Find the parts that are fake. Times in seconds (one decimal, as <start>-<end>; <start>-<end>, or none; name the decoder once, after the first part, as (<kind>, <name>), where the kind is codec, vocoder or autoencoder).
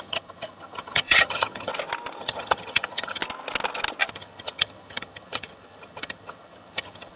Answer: 0.0-1.7 (vocoder, HiFi-GAN); 2.2-3.2; 4.1-7.2